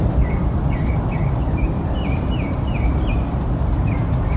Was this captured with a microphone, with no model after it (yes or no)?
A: yes